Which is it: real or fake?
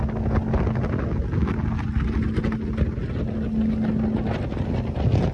real